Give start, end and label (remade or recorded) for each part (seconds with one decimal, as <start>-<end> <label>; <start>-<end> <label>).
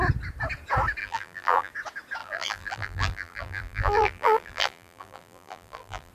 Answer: 0.0-1.0 recorded; 1.0-1.7 remade; 1.7-2.2 recorded; 2.2-6.1 remade